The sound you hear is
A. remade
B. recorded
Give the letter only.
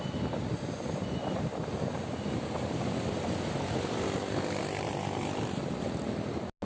B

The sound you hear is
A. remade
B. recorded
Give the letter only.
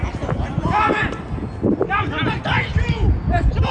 B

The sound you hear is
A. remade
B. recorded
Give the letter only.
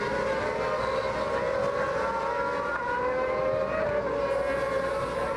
B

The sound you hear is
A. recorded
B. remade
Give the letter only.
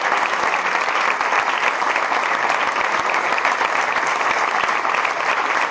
A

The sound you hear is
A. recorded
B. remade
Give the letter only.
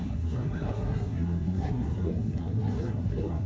B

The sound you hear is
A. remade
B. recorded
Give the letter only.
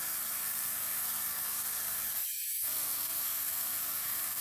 A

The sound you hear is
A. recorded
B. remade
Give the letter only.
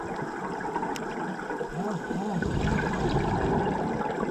A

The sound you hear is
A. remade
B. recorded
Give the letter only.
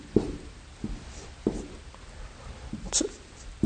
B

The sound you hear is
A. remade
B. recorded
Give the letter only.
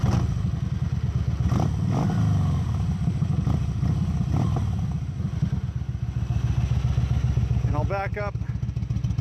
B